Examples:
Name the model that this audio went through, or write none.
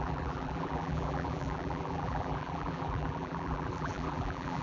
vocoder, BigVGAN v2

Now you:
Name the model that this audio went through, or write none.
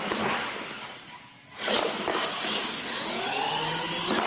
none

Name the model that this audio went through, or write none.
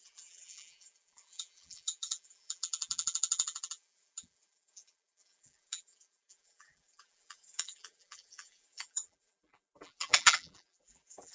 vocoder, BigVGAN v2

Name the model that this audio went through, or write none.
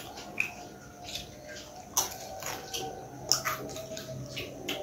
none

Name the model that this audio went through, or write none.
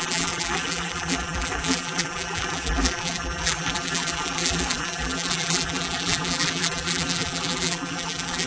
vocoder, BigVGAN v2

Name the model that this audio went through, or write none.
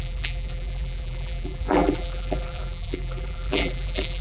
vocoder, BigVGAN v2